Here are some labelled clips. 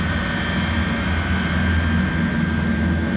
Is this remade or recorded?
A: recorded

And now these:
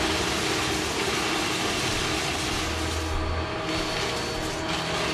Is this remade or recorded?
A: recorded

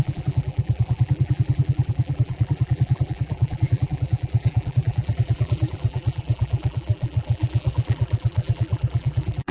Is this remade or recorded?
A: remade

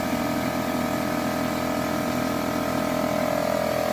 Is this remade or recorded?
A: recorded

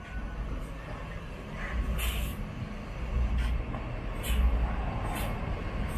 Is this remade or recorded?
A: recorded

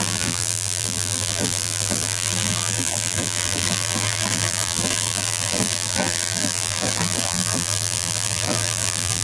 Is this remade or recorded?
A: remade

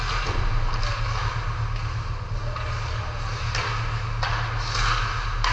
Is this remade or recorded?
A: recorded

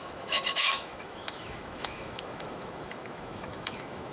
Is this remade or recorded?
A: remade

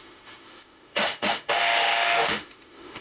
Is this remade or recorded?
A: remade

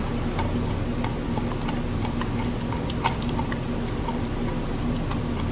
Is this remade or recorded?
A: recorded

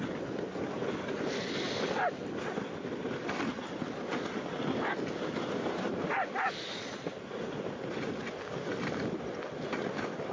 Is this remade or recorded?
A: recorded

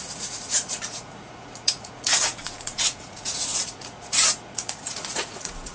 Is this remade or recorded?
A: remade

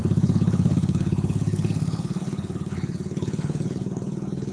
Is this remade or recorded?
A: remade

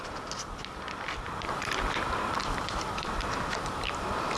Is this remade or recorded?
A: remade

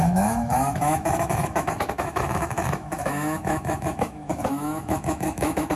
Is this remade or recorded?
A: remade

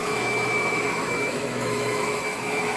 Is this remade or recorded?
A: remade